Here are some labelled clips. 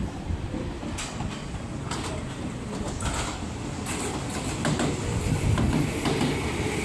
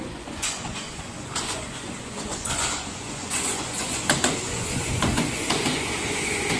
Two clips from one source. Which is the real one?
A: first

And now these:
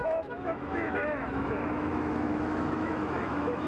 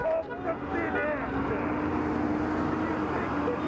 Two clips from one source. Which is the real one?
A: second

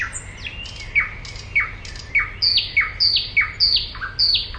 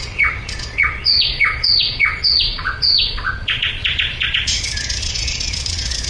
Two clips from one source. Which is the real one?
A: first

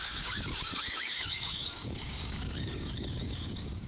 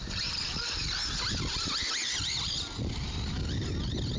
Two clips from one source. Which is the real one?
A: second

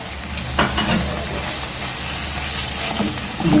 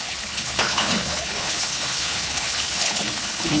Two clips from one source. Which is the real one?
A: first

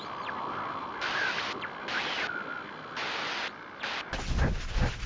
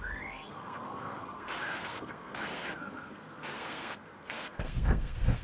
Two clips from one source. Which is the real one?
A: first